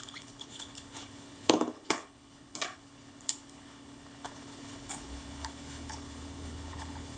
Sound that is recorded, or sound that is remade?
remade